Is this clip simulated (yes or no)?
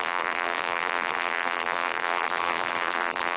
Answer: yes